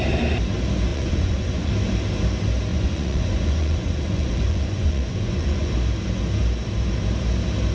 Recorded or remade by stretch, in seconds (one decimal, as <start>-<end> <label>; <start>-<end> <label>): 0.0-0.9 recorded; 0.9-1.7 remade; 1.7-2.7 recorded; 2.7-5.7 remade; 5.7-7.7 recorded